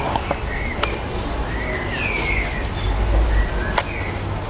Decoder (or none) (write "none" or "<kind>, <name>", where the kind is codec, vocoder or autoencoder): none